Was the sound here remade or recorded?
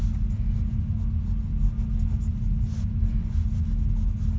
recorded